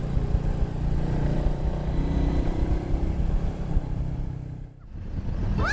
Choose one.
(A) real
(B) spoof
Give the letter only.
B